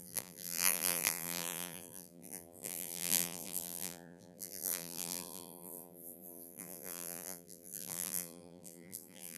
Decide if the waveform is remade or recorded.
remade